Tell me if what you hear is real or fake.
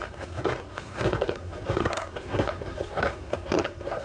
fake